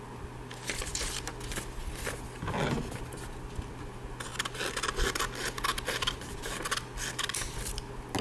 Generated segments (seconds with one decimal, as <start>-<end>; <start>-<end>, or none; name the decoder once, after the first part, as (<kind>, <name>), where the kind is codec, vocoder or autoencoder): none